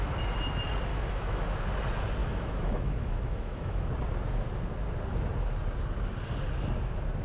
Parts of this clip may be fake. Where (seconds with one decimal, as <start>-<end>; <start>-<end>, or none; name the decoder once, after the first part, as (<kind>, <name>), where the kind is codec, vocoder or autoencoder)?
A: 0.9-1.4 (autoencoder, DAC-VAE); 2.2-3.9